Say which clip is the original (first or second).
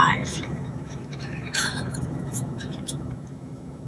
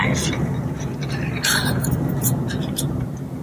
second